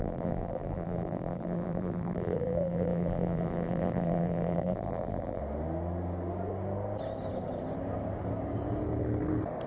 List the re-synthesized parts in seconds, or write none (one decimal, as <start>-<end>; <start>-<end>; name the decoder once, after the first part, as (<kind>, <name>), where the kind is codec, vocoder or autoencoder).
0.0-5.4 (vocoder, BigVGAN v2)